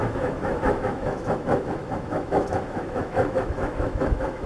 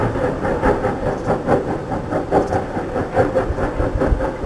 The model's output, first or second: first